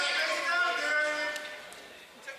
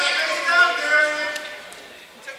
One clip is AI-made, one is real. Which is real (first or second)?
first